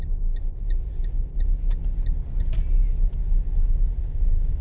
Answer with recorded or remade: recorded